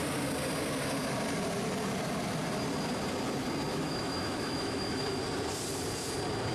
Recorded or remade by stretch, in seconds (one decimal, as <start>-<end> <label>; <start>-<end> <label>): 0.0-3.7 recorded; 3.7-5.2 remade; 5.2-6.5 recorded